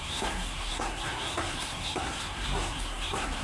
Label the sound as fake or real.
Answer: fake